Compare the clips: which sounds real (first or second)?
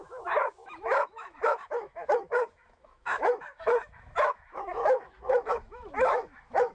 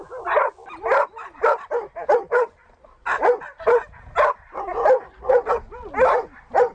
second